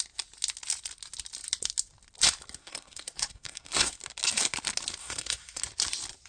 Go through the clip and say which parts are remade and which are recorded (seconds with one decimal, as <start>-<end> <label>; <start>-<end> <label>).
0.0-2.6 recorded; 2.6-4.0 remade; 4.0-5.0 recorded; 5.0-5.6 remade; 5.6-6.3 recorded